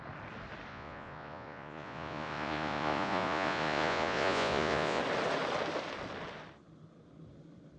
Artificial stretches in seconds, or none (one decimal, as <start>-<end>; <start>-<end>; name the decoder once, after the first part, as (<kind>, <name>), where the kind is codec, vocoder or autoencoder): 0.7-5.0 (vocoder, Vocos)